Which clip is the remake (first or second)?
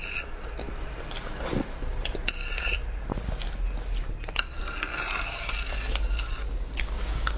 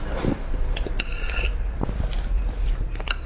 second